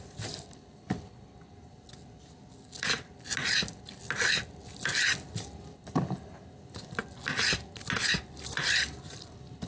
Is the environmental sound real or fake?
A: real